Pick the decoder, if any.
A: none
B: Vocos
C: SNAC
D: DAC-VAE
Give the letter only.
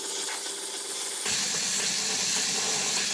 A